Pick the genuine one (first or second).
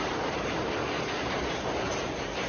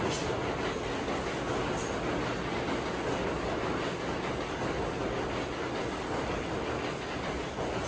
second